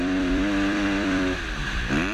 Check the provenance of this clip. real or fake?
fake